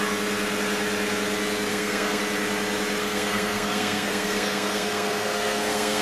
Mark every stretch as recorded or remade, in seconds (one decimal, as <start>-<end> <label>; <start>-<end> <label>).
0.0-1.7 recorded; 1.7-2.2 remade; 2.2-3.0 recorded; 3.0-6.0 remade